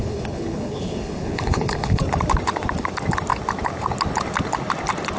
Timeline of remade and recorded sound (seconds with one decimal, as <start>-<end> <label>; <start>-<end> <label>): 0.0-2.0 remade; 2.0-5.2 recorded